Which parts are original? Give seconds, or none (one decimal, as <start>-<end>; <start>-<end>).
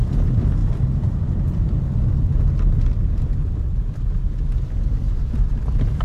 0.0-0.6; 4.2-6.0